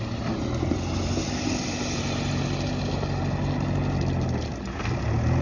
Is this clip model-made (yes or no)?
no